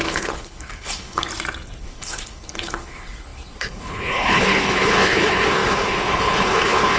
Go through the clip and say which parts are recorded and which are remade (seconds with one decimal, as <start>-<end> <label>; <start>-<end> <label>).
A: 0.0-1.3 remade; 1.3-1.8 recorded; 1.8-7.0 remade